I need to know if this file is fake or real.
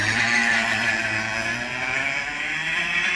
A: fake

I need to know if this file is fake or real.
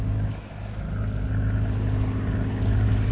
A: real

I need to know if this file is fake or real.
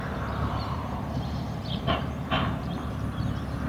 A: fake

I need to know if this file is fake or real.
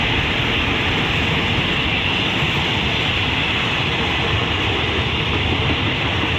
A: real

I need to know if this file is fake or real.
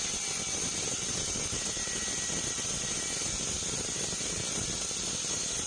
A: real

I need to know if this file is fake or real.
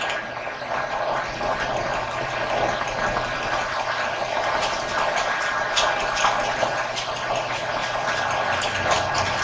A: real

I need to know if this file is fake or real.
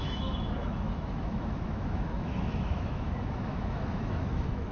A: fake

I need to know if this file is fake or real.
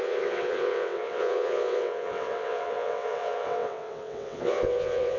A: fake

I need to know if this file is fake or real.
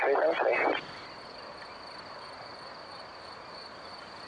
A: real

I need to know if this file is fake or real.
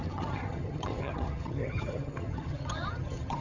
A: fake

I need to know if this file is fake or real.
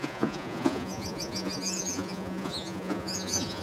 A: fake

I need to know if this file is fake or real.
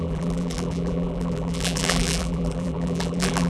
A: fake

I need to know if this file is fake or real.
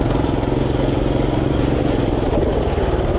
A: real